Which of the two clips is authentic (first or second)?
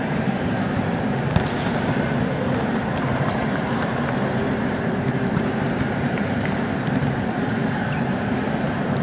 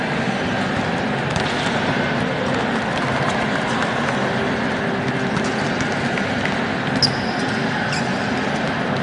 second